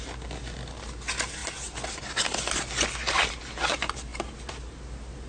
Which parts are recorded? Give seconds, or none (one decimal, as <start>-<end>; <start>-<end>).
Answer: 0.0-5.3

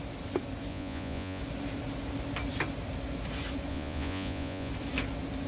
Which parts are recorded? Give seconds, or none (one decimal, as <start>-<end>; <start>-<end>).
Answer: 0.0-0.7; 1.4-3.7; 4.7-5.5

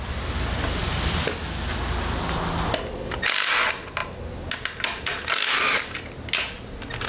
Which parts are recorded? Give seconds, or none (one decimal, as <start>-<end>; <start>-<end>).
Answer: 0.0-7.1

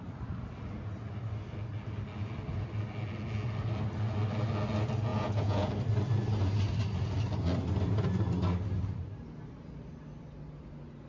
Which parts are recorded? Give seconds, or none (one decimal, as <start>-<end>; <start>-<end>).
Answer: 0.0-5.1; 5.7-11.1

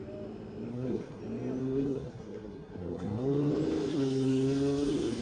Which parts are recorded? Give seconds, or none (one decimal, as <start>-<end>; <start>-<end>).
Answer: 0.0-0.7; 1.2-1.6; 3.5-3.9

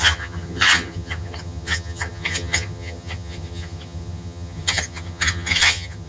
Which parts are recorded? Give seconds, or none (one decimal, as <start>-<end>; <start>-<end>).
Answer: none

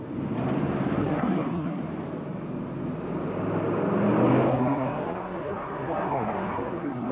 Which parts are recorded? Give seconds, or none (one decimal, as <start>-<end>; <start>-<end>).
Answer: 0.0-1.0; 1.8-4.5

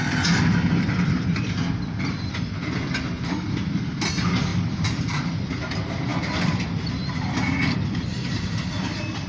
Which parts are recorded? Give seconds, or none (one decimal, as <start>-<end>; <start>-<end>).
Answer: 0.0-4.5; 5.5-6.1; 8.1-9.3